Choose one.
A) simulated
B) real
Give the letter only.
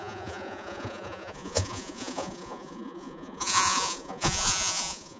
A